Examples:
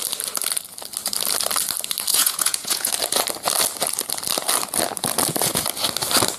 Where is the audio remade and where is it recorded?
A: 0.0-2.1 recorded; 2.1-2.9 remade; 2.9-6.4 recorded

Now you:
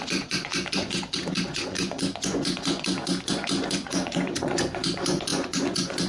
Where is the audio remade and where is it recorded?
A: 0.0-6.1 remade

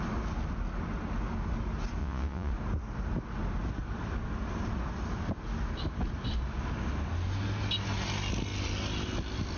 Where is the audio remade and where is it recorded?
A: 0.0-2.0 recorded; 2.0-2.5 remade; 2.5-9.6 recorded

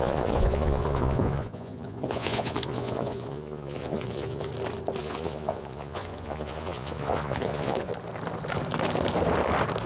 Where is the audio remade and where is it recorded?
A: 0.0-4.5 remade; 4.5-5.0 recorded; 5.0-7.9 remade; 7.9-9.9 recorded